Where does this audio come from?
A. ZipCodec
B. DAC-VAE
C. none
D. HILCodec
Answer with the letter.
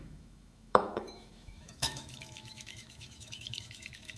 B